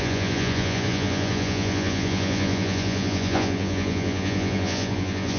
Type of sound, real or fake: fake